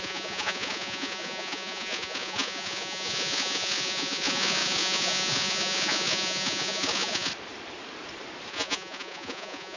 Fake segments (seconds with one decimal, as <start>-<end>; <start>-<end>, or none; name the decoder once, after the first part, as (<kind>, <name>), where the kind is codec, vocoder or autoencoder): 0.0-7.3 (vocoder, Vocos); 8.5-9.8